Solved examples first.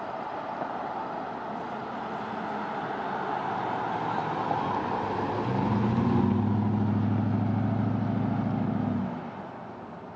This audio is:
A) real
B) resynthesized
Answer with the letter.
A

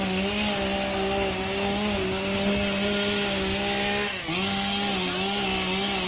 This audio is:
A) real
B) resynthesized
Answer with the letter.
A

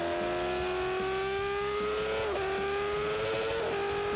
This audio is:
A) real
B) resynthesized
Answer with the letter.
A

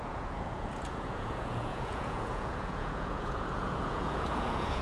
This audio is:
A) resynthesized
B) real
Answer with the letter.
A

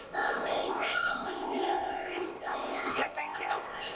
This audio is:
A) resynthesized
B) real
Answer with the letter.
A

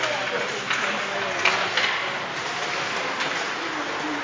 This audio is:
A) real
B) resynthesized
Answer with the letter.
A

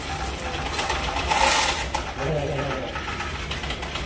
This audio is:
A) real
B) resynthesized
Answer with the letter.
A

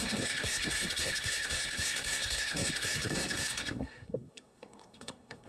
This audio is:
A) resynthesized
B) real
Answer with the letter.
A